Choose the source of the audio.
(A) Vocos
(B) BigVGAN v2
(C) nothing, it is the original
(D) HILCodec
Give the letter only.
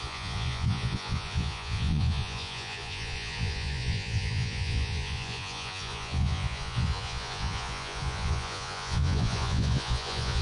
A